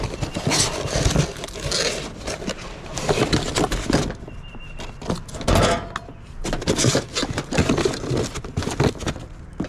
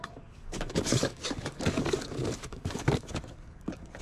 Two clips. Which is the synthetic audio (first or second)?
second